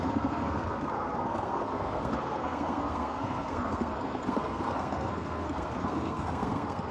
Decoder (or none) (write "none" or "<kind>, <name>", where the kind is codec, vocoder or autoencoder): codec, SNAC